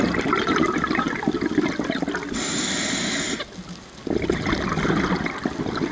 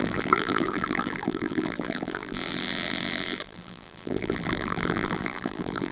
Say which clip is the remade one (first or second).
second